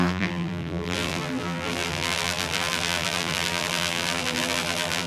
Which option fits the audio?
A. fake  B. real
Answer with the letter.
A